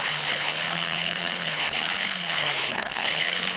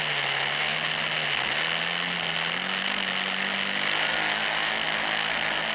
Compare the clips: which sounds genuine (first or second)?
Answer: second